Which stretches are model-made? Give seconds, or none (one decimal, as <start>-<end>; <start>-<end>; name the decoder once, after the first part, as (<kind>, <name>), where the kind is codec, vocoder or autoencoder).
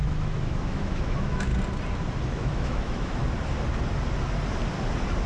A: 0.0-1.5 (autoencoder, DAC-VAE); 2.3-3.2